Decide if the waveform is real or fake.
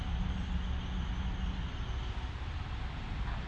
real